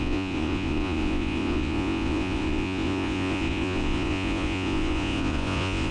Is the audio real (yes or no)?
no